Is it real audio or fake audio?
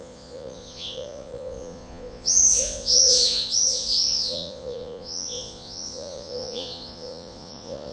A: fake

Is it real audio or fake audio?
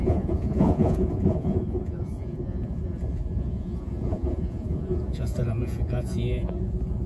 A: fake